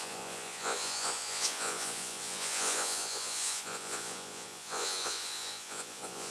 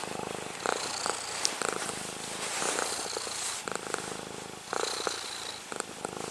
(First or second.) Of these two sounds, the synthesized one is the first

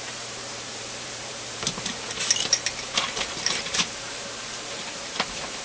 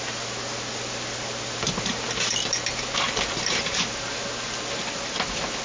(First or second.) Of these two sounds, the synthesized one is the first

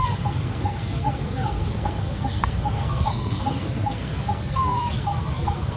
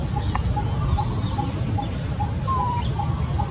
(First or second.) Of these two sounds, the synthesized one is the first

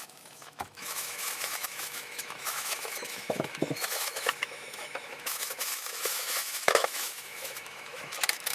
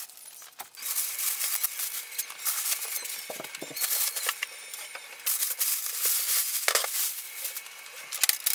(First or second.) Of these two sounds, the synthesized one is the first